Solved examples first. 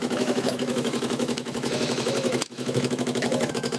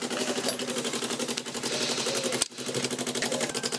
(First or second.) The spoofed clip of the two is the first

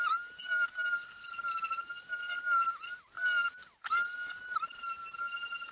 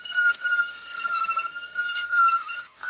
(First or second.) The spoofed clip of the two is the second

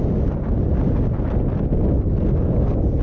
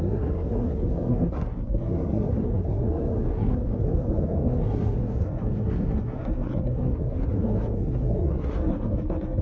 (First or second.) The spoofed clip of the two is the second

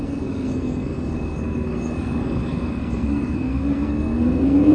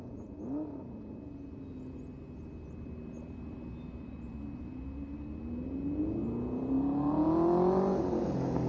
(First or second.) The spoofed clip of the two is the first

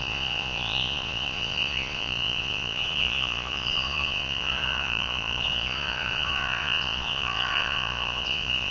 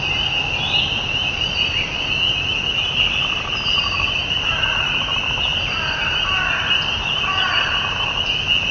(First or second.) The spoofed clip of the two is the first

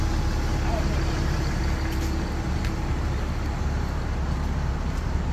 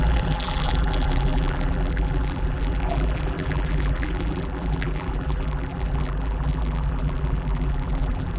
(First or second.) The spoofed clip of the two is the second